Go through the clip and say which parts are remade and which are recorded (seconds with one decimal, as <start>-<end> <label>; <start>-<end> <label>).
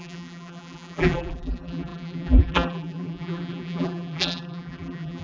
0.0-5.2 remade